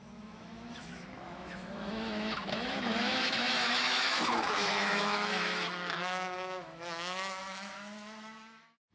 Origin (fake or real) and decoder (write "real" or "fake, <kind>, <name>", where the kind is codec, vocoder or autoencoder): fake, autoencoder, DAC-VAE